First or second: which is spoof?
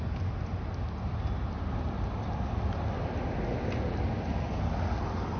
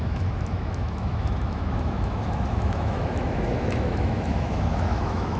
second